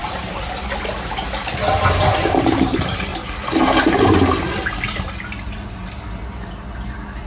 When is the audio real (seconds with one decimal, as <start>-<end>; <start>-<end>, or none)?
0.0-2.4; 3.1-7.3

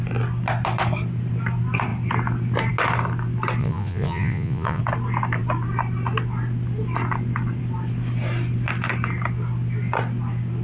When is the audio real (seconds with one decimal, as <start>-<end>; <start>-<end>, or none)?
0.0-3.6; 4.8-10.6

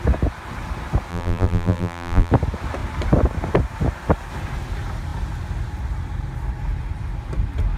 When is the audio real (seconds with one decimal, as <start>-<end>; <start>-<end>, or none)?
0.0-1.1; 2.3-7.8

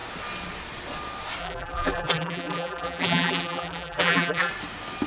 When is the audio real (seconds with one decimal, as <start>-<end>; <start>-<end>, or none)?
0.0-1.4; 4.5-5.1

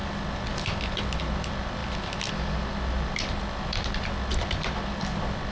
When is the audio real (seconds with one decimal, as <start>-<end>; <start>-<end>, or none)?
0.0-1.2; 1.8-2.3

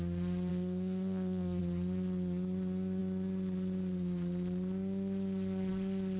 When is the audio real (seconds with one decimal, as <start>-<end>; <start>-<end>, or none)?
0.0-0.5; 1.6-6.2

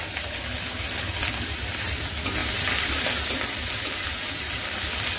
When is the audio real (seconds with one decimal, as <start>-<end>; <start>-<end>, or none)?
0.0-5.2